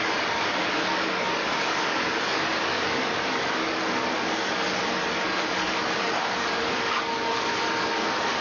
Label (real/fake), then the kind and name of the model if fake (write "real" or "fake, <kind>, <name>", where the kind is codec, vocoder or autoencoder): fake, codec, DAC